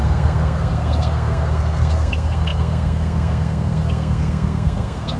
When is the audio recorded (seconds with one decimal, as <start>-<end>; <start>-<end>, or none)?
none